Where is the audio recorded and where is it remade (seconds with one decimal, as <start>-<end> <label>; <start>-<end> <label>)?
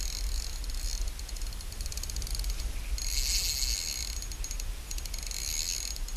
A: 0.0-1.9 recorded; 1.9-2.8 remade; 2.8-6.2 recorded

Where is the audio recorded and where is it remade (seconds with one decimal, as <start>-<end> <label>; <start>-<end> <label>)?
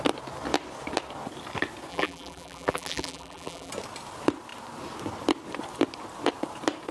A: 0.0-1.9 recorded; 1.9-3.7 remade; 3.7-6.9 recorded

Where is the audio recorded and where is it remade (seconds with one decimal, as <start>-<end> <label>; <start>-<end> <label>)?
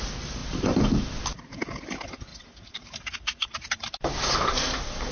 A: 0.0-0.4 recorded; 0.4-1.2 remade; 1.2-2.3 recorded; 2.3-5.1 remade